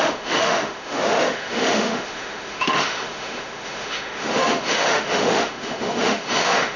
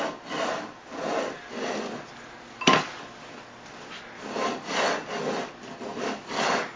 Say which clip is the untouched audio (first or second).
second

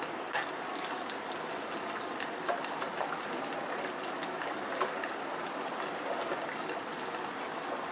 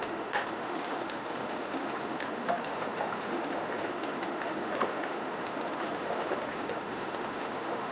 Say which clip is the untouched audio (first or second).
first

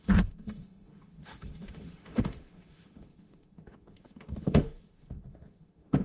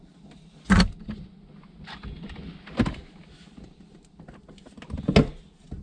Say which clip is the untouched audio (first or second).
second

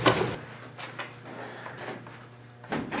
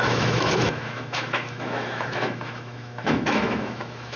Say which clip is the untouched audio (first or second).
first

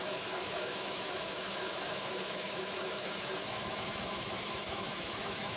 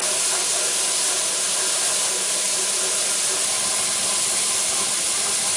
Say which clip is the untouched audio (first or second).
second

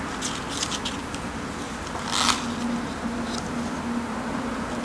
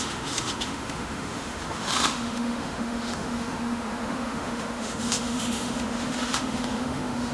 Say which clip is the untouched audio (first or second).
first